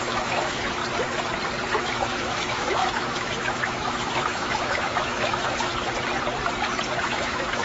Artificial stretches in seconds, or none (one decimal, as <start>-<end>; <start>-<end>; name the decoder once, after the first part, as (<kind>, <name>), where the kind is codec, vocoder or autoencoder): 0.0-0.8 (autoencoder, DAC-VAE); 1.8-5.7; 7.0-7.6